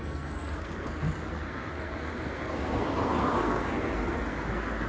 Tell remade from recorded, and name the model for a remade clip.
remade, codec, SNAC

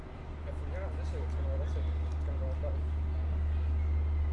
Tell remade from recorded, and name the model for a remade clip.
recorded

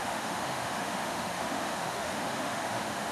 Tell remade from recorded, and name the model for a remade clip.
remade, autoencoder, DAC-VAE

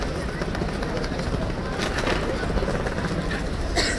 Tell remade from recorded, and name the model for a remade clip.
recorded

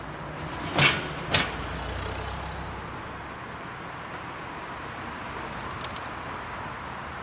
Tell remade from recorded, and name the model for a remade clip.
recorded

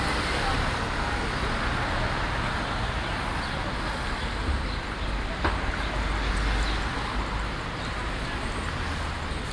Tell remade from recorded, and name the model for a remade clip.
recorded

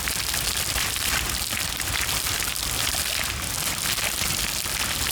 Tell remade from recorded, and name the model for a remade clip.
recorded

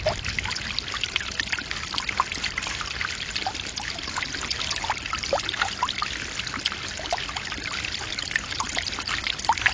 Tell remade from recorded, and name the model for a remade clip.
recorded